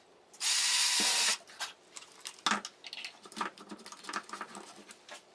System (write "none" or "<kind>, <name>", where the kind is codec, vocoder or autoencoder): none